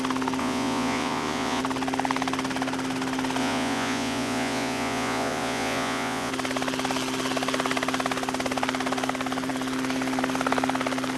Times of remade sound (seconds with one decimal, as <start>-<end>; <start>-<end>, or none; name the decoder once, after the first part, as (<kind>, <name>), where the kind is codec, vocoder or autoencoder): 0.4-1.6 (vocoder, Vocos); 3.4-6.3